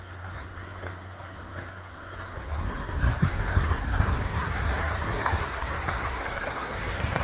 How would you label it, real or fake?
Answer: fake